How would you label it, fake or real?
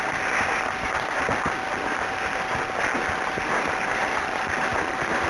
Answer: real